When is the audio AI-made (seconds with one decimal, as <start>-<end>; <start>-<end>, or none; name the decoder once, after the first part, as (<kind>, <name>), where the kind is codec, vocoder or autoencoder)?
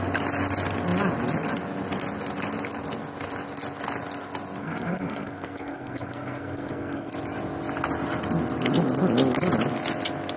4.6-7.1 (codec, SNAC)